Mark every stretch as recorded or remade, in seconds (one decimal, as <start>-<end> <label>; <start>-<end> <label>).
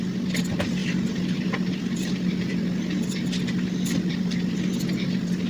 0.0-5.5 recorded